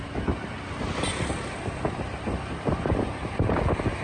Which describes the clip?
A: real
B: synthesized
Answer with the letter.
A